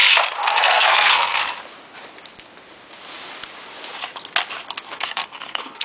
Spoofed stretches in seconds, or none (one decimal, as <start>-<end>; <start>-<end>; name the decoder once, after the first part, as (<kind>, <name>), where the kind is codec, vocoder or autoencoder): 0.6-1.4 (codec, SNAC); 4.9-5.8